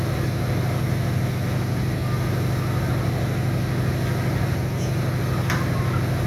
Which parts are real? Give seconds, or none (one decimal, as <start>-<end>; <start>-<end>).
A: 0.0-6.3